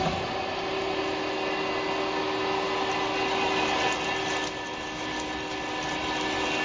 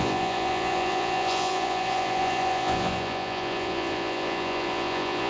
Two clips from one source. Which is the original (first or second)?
first